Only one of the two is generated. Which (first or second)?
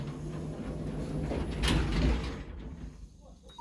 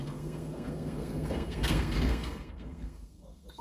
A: second